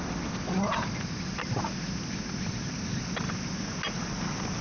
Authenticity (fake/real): real